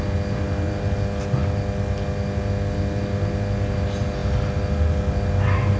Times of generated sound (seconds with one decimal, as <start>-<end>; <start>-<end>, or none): none